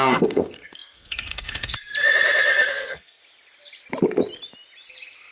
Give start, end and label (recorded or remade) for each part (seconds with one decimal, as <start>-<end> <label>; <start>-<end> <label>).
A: 0.0-1.9 remade; 1.9-2.7 recorded; 2.7-3.2 remade; 3.2-5.3 recorded